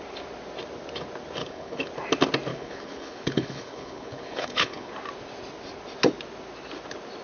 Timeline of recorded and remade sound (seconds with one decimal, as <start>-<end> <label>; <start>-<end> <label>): 0.0-1.4 recorded; 1.4-1.9 remade; 1.9-2.5 recorded; 2.5-4.9 remade; 4.9-7.2 recorded